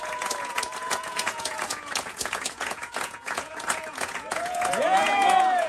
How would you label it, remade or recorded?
remade